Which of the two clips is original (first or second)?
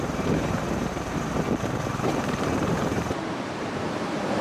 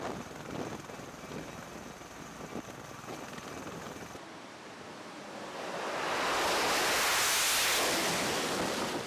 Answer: second